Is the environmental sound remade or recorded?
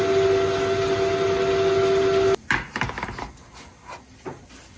recorded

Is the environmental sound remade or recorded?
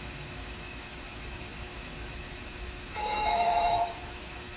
remade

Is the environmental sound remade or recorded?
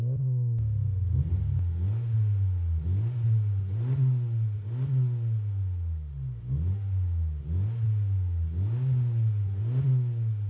recorded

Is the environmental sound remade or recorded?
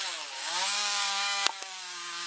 remade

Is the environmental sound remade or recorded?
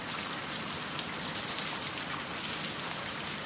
recorded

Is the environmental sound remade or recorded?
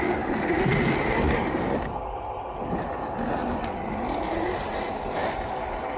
recorded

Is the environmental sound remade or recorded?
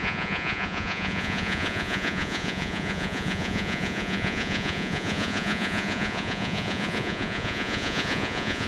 remade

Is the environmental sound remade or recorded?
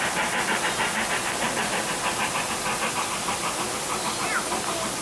recorded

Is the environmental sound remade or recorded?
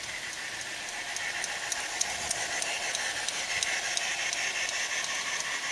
recorded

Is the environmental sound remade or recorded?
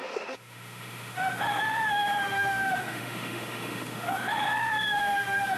remade